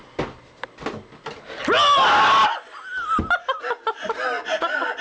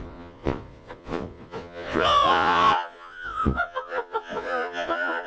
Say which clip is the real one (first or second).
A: first